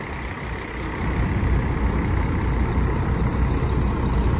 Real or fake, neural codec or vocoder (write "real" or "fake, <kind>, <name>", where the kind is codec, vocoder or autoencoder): real